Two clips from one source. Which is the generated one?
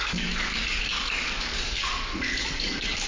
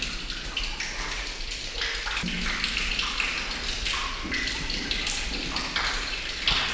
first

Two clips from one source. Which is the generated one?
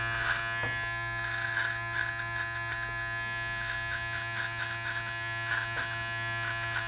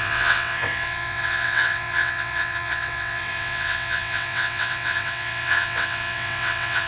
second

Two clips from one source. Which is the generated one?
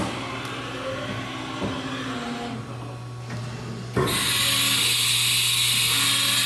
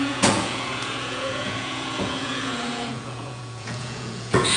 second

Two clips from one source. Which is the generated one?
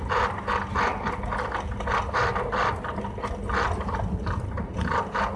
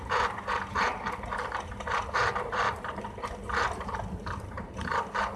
second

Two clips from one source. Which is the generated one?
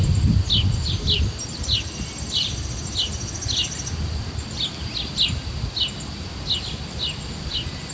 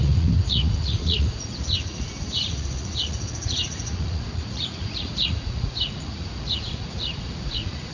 second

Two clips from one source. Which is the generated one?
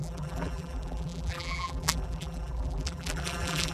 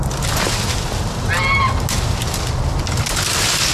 first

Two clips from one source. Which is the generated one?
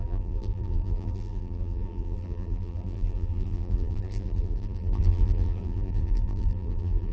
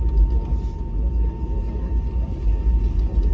first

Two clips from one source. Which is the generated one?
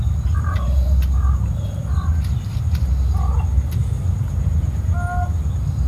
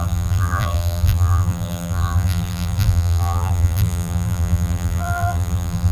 second